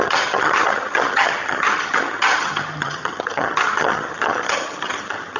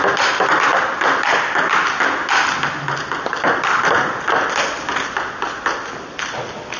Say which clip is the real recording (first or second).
second